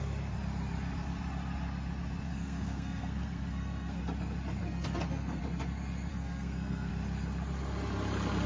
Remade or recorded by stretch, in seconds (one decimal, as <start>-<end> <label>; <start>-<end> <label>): 0.0-2.3 recorded; 2.3-4.0 remade; 4.0-4.6 recorded; 4.6-5.4 remade; 5.4-6.1 recorded; 6.1-6.9 remade; 6.9-8.5 recorded